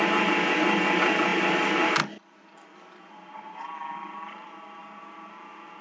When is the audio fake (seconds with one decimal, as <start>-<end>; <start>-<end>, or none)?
none